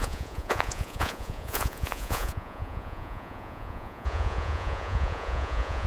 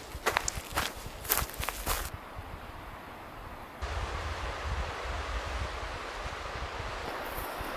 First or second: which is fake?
first